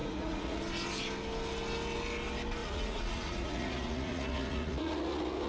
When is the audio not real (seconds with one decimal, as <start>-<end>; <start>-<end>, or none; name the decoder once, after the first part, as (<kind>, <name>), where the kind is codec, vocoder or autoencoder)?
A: 0.0-0.6 (vocoder, Vocos); 2.6-5.5